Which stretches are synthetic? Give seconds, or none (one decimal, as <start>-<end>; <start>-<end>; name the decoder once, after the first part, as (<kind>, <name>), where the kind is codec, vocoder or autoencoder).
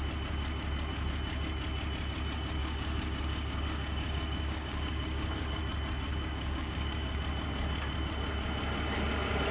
2.6-5.6 (codec, DAC); 6.1-7.2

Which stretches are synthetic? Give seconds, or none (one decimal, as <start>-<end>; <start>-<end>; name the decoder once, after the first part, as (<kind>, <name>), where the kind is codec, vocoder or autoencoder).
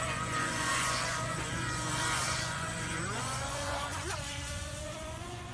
0.0-5.5 (vocoder, Vocos)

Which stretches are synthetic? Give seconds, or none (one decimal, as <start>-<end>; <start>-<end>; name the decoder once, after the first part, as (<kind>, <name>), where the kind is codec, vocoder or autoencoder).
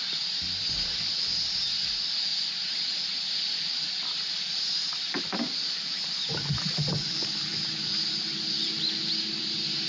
none